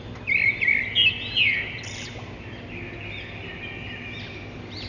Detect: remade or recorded recorded